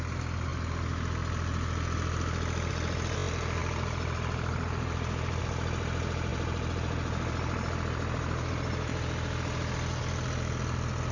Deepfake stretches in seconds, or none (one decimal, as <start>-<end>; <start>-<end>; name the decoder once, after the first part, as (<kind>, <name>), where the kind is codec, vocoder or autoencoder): none